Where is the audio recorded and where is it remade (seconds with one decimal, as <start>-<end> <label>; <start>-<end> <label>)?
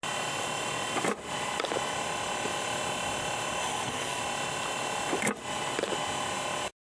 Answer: 0.0-3.6 recorded; 3.6-4.2 remade; 4.2-6.8 recorded